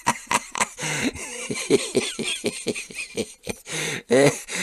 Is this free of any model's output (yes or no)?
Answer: no